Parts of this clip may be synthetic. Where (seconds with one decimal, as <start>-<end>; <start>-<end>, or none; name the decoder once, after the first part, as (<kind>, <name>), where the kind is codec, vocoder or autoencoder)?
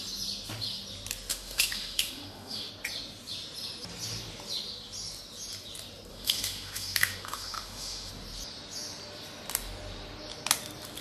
1.3-2.7 (autoencoder, DAC-VAE); 6.1-8.1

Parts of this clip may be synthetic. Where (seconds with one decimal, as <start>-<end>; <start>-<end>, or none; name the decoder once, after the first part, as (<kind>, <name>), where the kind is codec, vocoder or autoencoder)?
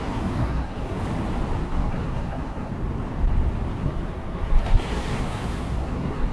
0.0-1.0 (codec, SNAC); 1.6-2.7; 3.8-6.3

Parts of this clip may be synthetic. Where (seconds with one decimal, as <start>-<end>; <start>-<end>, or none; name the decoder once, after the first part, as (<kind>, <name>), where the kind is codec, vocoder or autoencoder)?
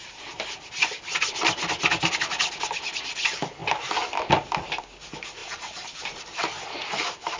5.4-7.4 (vocoder, BigVGAN v2)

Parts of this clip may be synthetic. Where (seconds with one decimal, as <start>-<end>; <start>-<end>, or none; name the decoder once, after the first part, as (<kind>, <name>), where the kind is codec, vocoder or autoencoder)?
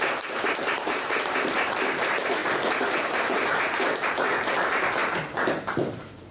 0.0-6.3 (vocoder, BigVGAN v2)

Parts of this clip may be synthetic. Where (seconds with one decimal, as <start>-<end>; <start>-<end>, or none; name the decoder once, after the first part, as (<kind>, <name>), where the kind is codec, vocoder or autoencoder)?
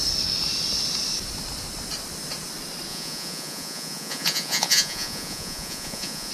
2.9-6.3 (vocoder, Vocos)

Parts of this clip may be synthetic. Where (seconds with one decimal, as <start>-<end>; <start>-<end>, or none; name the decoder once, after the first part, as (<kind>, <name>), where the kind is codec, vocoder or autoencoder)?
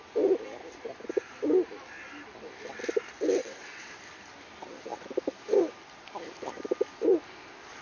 3.4-3.9 (vocoder, WaveNeXt)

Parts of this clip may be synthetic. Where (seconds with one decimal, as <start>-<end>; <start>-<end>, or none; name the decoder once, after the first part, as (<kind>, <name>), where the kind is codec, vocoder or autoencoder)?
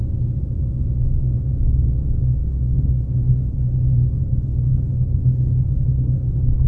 2.4-6.7 (codec, HILCodec)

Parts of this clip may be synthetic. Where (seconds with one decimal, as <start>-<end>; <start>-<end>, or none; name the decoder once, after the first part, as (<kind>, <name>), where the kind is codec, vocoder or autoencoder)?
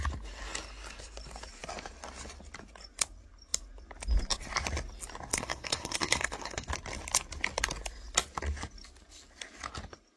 5.3-6.7 (codec, SNAC)